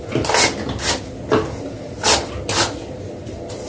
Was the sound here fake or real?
real